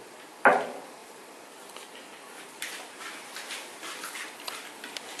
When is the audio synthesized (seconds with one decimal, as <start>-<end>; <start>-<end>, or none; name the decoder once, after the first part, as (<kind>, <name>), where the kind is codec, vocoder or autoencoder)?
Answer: none